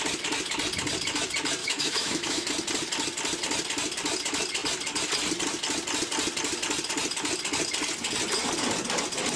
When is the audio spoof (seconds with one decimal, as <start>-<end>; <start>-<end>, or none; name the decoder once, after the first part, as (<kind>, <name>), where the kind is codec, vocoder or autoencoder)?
1.6-2.5 (autoencoder, DAC-VAE)